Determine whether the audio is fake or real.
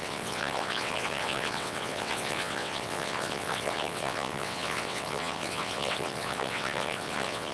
fake